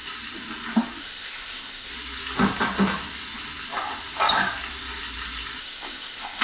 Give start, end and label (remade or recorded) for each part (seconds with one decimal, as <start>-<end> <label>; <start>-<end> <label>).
0.0-1.0 recorded; 1.0-1.9 remade; 1.9-5.6 recorded; 5.6-6.4 remade